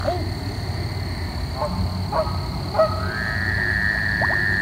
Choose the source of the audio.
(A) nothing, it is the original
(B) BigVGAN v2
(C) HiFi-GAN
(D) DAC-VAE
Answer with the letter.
A